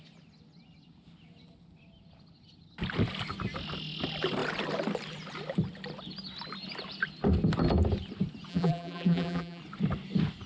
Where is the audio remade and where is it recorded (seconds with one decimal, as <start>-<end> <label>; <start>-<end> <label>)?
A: 0.0-8.5 recorded; 8.5-9.6 remade; 9.6-10.5 recorded